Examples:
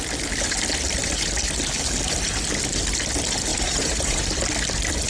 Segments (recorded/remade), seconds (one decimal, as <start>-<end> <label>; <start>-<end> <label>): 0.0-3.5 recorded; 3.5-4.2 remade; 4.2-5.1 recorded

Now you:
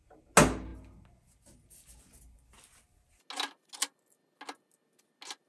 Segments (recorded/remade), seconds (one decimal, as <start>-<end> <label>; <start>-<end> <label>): 0.0-5.5 recorded

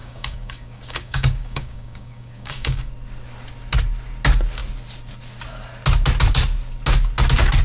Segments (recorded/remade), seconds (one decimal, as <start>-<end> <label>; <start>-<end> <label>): 0.0-2.9 remade; 2.9-7.6 recorded

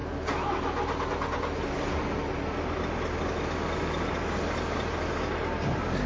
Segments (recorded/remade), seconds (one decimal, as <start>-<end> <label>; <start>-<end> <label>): 0.0-6.1 recorded

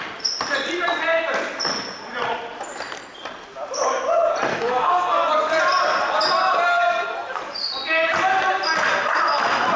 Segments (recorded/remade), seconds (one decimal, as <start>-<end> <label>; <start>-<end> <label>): 0.0-4.5 recorded; 4.5-5.2 remade; 5.2-6.7 recorded; 6.7-7.4 remade; 7.4-9.8 recorded

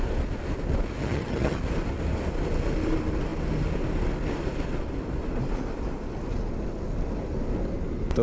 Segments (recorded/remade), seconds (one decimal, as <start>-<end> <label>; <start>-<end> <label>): 0.0-1.0 recorded; 1.0-1.6 remade; 1.6-8.2 recorded